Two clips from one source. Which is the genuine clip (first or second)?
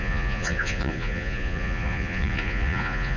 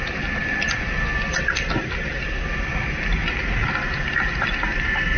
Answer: second